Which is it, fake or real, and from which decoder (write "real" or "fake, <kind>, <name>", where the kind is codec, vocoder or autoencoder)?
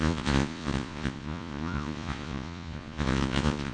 fake, vocoder, Vocos